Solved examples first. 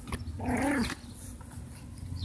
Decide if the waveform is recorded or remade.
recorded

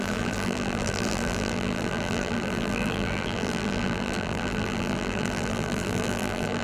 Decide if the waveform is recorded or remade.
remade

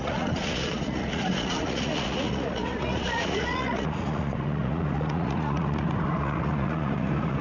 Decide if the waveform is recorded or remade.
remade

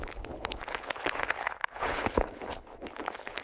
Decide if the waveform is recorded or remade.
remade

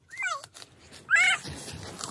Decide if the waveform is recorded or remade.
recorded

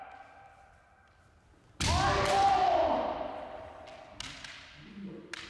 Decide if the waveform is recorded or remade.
recorded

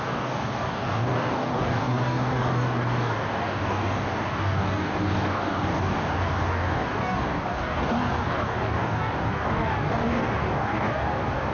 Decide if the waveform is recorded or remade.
remade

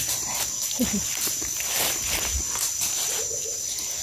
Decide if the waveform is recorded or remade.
recorded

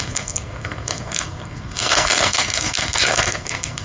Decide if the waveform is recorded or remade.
remade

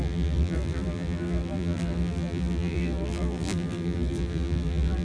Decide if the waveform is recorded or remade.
remade